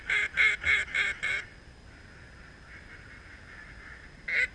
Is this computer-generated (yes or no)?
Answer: no